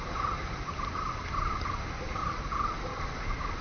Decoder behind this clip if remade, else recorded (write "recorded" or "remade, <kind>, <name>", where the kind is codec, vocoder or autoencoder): recorded